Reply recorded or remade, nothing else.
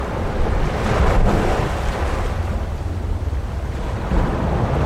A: recorded